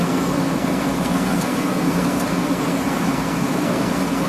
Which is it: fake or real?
fake